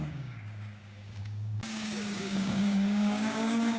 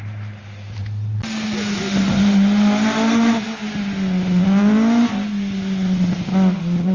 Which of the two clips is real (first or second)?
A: second